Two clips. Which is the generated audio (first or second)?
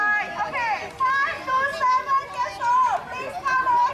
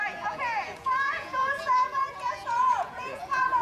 second